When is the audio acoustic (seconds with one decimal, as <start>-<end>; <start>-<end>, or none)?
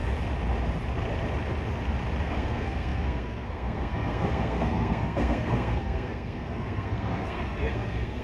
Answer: 0.0-2.2